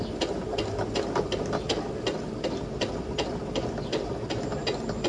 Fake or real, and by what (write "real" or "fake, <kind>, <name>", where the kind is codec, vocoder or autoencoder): real